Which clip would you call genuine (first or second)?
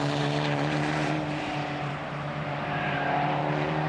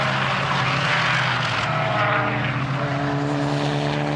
second